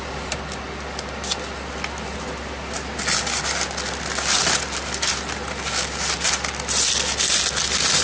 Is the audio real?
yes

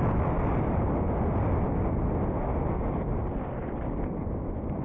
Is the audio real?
yes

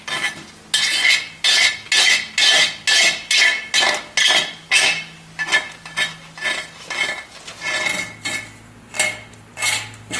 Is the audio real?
yes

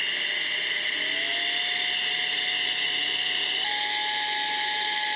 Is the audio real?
yes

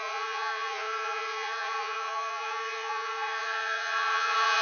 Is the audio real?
no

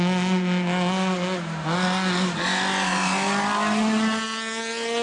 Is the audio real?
yes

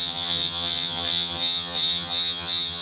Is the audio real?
no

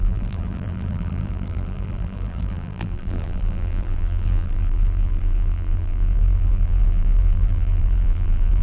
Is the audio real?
no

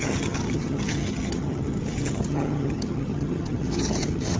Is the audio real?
no